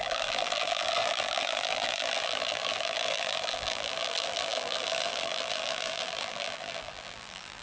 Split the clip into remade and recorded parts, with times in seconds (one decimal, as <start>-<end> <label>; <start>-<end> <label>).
0.0-7.6 remade